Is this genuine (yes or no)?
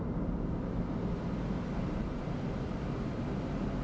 yes